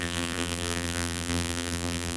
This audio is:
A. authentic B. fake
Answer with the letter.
B